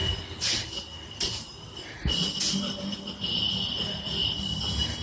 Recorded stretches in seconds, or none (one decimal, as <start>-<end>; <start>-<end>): 0.0-5.0